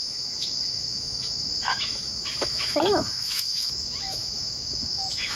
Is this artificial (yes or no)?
yes